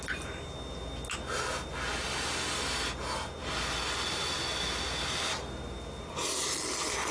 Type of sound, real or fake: real